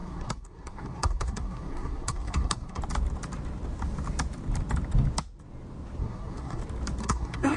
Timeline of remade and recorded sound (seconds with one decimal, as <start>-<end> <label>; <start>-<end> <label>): 0.0-2.8 remade; 2.8-6.0 recorded; 6.0-6.6 remade; 6.6-7.0 recorded; 7.0-7.6 remade